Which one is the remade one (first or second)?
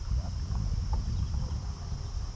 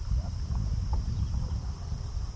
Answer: second